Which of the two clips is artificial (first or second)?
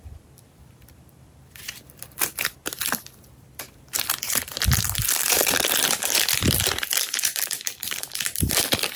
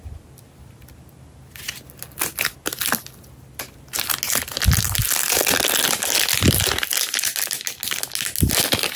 first